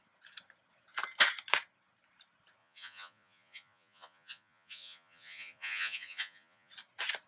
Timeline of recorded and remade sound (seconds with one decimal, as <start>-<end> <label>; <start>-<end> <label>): 0.0-2.6 recorded; 2.6-6.7 remade; 6.7-7.3 recorded